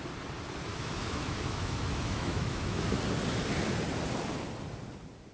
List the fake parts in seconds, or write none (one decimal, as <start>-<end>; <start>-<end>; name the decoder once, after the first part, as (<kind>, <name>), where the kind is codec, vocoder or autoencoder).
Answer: 0.7-3.0 (autoencoder, DAC-VAE)